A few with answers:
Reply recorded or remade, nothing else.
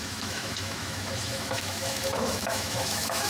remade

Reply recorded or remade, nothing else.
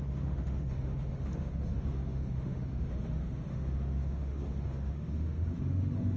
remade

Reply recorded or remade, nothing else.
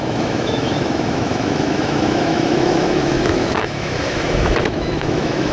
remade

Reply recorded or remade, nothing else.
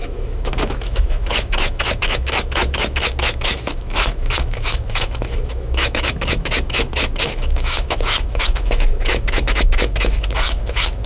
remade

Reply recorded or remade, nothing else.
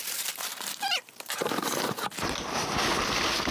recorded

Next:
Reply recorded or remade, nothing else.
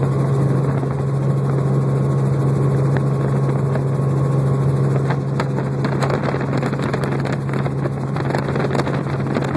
recorded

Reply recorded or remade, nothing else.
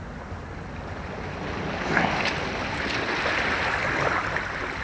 recorded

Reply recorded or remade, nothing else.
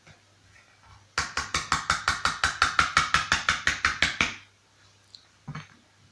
recorded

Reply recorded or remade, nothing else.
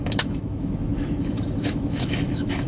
remade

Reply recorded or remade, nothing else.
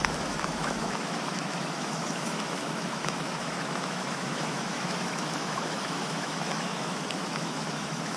remade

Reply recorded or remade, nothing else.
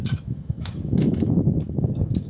remade